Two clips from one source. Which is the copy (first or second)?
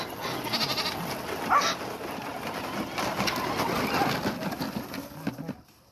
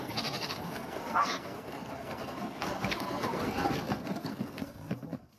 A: second